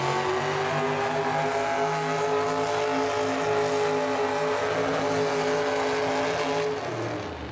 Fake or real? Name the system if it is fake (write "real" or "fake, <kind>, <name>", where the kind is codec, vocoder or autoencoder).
real